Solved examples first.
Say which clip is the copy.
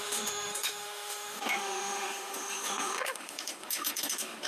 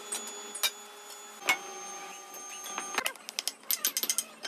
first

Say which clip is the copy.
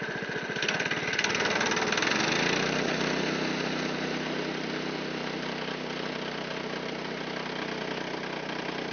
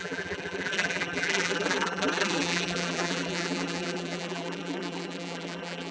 second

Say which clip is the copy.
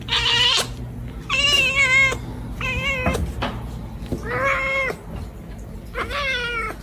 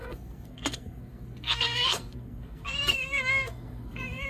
second